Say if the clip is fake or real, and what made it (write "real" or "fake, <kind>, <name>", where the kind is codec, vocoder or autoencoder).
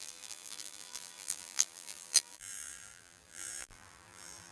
fake, vocoder, BigVGAN v2